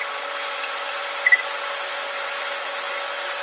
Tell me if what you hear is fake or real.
real